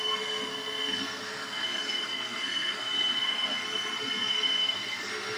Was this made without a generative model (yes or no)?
no